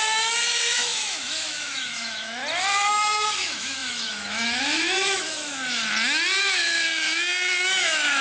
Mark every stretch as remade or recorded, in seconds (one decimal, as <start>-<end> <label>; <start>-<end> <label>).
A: 0.0-2.4 remade; 2.4-2.9 recorded; 2.9-5.8 remade; 5.8-6.4 recorded; 6.4-8.2 remade